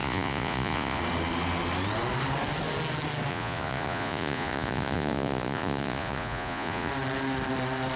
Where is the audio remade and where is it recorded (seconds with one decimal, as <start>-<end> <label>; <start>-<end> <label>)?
0.0-1.0 remade; 1.0-3.3 recorded; 3.3-6.9 remade; 6.9-8.0 recorded